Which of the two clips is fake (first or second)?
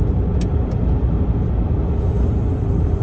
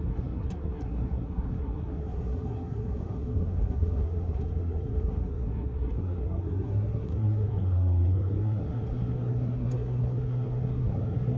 second